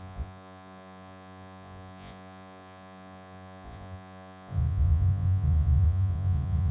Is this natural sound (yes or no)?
no